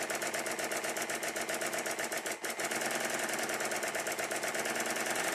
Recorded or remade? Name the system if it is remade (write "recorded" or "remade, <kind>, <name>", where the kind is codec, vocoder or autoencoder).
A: recorded